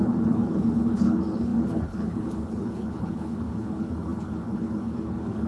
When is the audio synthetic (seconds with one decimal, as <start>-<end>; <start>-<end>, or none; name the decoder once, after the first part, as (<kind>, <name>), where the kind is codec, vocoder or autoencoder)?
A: 0.0-5.5 (codec, HILCodec)